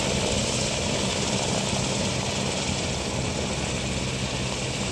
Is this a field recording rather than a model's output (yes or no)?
yes